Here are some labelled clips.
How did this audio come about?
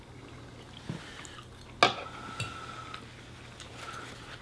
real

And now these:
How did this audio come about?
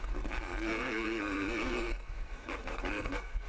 fake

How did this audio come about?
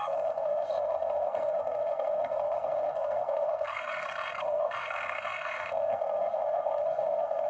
fake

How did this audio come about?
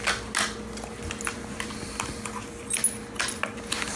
real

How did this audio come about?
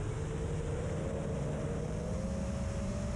real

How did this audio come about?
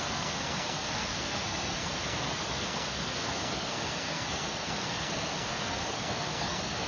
fake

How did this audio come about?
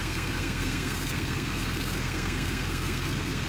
fake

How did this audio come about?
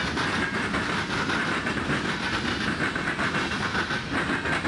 real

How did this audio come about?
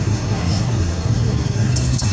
fake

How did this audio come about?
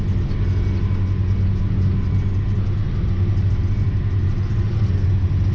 real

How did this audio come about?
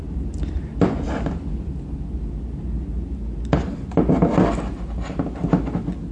real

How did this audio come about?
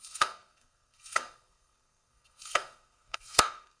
fake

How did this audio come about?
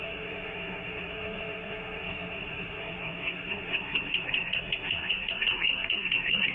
fake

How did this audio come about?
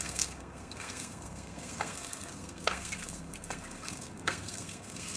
fake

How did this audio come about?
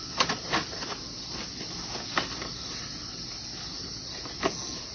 real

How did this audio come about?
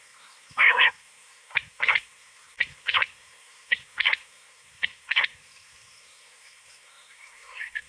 fake